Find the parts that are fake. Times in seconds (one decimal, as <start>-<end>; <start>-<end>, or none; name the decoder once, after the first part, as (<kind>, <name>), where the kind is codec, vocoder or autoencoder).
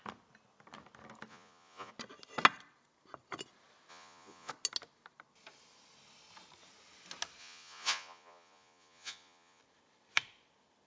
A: 1.3-1.9 (vocoder, Vocos); 3.9-4.5; 7.4-9.6